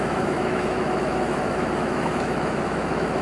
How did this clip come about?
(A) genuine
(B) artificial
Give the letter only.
B